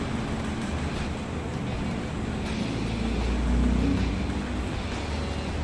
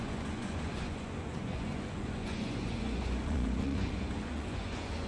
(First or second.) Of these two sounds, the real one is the first